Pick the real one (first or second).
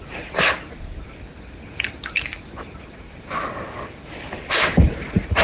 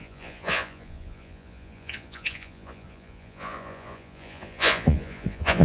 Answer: first